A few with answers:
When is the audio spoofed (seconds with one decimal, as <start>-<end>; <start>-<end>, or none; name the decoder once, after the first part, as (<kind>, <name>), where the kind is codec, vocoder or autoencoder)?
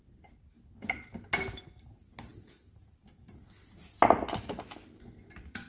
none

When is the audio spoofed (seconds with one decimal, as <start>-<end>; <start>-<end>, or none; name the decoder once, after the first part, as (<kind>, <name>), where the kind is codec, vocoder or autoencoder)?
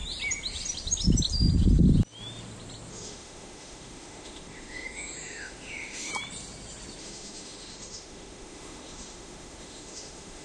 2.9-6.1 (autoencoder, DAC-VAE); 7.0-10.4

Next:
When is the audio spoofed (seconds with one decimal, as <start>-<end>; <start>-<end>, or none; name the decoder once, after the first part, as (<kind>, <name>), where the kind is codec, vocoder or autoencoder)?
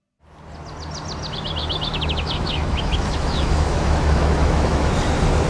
1.6-4.9 (autoencoder, DAC-VAE)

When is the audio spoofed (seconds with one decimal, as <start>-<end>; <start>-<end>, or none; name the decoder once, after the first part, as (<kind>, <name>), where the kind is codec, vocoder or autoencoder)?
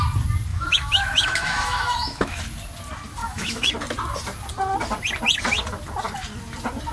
0.5-2.4 (autoencoder, DAC-VAE); 3.2-3.7